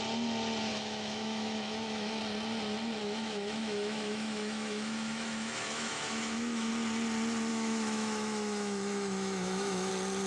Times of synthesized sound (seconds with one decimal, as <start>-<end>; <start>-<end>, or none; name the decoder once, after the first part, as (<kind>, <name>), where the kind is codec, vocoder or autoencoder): 0.7-2.2 (autoencoder, DAC-VAE); 3.0-6.7; 7.5-9.9

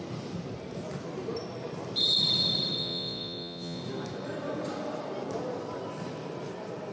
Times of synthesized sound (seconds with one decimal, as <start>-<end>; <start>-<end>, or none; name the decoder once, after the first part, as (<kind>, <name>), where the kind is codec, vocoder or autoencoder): 2.8-3.8 (vocoder, Vocos)

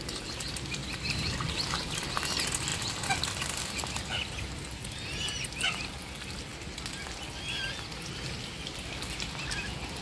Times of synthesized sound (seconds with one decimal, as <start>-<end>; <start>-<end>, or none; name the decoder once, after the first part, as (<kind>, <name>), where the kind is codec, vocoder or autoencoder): none